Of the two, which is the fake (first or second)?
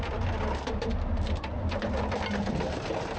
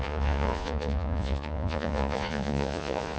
second